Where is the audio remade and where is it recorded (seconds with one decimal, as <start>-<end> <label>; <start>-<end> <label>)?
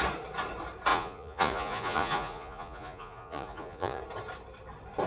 0.0-0.9 recorded; 0.9-4.0 remade; 4.0-5.1 recorded